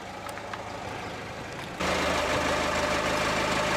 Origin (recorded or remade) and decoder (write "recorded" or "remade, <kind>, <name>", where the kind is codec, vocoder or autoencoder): recorded